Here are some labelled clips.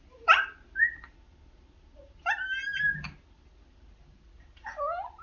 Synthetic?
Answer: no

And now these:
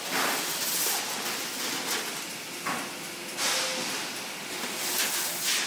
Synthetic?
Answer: no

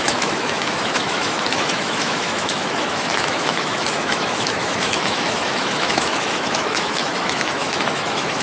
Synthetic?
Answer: yes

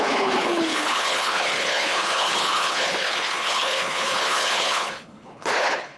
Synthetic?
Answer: yes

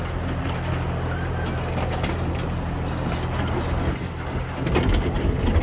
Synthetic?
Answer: no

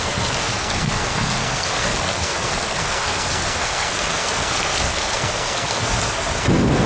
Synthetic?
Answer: yes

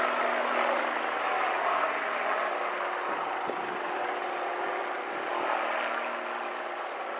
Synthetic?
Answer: no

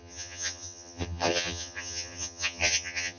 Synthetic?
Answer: yes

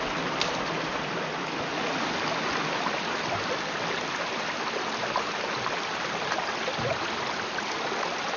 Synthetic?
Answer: no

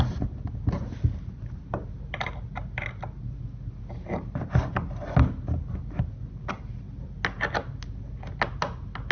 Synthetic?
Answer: no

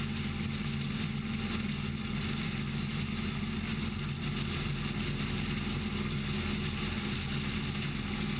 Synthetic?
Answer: no